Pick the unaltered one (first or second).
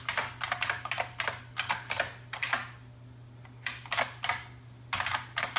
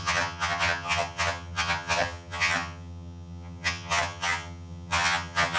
first